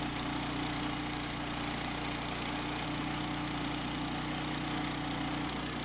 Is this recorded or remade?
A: recorded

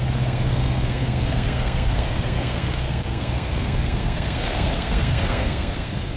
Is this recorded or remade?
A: remade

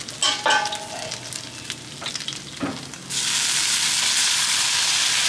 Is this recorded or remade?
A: recorded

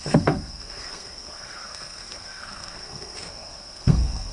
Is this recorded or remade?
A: remade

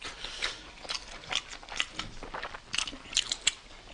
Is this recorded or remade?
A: recorded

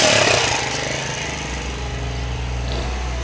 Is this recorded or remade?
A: recorded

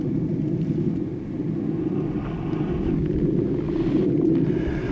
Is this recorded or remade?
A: recorded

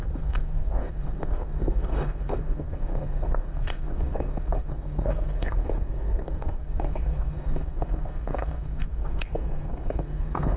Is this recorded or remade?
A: remade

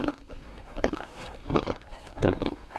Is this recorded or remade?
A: remade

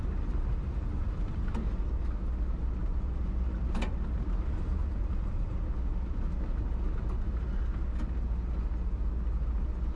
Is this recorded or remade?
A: recorded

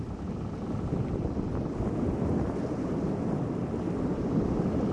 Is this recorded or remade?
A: recorded